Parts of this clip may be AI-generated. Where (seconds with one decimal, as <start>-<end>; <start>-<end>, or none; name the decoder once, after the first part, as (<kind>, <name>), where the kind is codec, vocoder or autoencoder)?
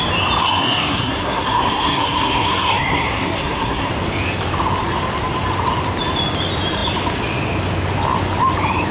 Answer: 0.4-3.9 (codec, SNAC)